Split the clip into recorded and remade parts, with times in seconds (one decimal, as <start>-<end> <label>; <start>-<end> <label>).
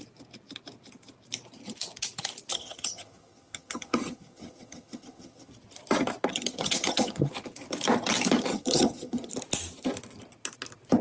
0.0-2.5 recorded; 2.5-5.5 remade; 5.5-6.3 recorded; 6.3-7.3 remade; 7.3-8.5 recorded; 8.5-9.3 remade; 9.3-11.0 recorded